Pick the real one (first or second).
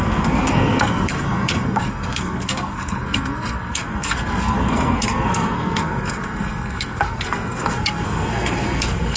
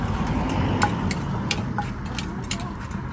second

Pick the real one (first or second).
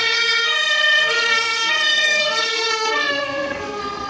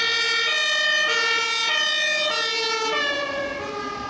second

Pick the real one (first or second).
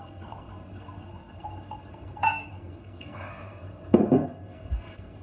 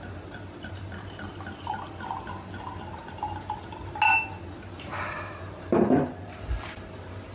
second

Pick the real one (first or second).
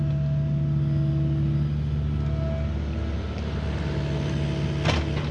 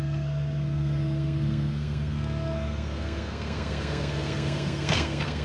first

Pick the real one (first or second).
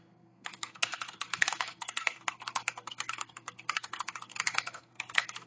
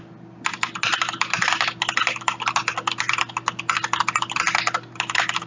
second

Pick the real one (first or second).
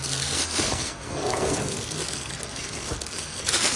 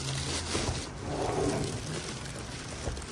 second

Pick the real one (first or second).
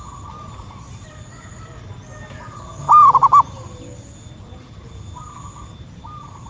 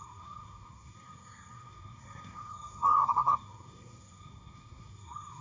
first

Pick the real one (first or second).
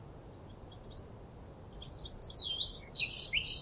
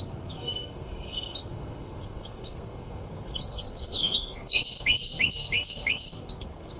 first